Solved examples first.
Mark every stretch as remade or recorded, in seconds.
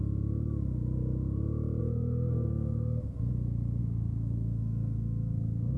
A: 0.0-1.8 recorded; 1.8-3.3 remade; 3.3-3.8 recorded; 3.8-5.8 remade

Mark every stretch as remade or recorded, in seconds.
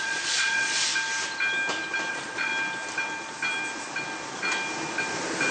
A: 0.0-0.9 remade; 0.9-2.1 recorded; 2.1-2.5 remade; 2.5-5.5 recorded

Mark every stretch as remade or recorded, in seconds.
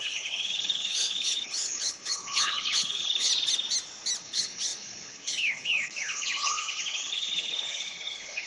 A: 0.0-3.3 remade; 3.3-4.2 recorded; 4.2-8.5 remade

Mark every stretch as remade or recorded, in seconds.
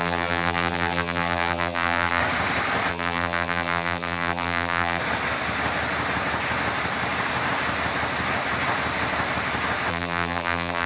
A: 0.0-2.2 remade; 2.2-2.9 recorded; 2.9-5.0 remade; 5.0-9.9 recorded; 9.9-10.9 remade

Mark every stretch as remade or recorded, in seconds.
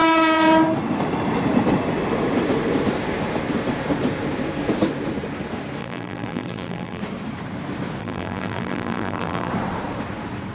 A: 0.0-5.8 recorded; 5.8-7.0 remade; 7.0-8.0 recorded; 8.0-9.5 remade; 9.5-10.5 recorded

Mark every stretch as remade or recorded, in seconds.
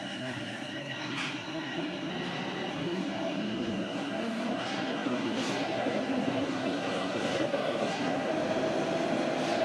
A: 0.0-2.1 remade; 2.1-2.7 recorded; 2.7-8.3 remade; 8.3-9.6 recorded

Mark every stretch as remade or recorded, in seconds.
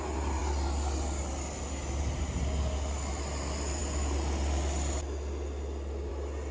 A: 0.0-6.5 recorded